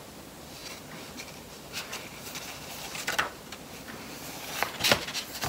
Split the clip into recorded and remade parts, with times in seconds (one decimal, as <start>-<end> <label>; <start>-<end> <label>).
0.0-0.6 recorded; 0.6-3.5 remade; 3.5-5.5 recorded